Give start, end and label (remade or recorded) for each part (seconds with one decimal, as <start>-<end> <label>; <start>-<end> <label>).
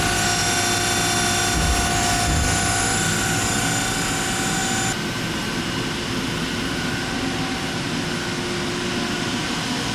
0.0-9.9 recorded